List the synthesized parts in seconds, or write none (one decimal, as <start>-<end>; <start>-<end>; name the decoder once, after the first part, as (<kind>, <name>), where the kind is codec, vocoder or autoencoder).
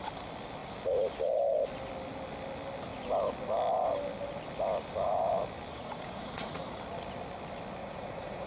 5.7-6.6 (vocoder, Vocos); 7.8-8.5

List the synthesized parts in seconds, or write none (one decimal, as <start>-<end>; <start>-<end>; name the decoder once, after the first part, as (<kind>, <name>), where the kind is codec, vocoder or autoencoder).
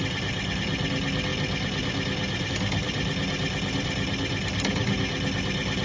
none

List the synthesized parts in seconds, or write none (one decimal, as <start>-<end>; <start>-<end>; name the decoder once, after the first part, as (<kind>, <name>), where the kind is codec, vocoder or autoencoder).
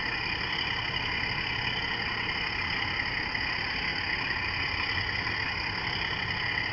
none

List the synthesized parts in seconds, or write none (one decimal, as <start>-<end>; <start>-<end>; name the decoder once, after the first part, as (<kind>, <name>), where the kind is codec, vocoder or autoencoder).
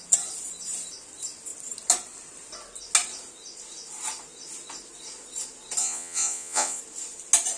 5.8-6.8 (vocoder, Vocos)